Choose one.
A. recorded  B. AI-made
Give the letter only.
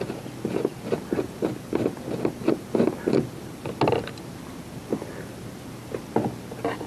A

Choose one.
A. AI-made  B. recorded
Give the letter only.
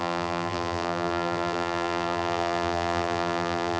A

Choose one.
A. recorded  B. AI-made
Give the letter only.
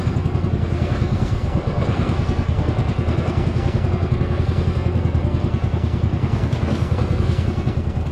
B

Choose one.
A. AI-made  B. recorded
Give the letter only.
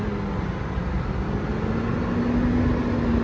B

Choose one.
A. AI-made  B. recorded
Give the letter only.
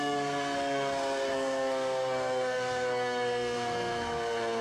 A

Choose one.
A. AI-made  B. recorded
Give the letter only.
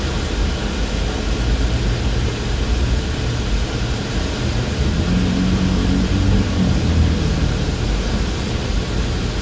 B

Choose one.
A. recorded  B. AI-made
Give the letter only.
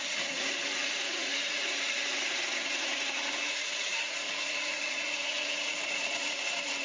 B